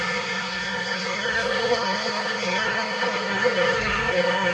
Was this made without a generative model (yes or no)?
no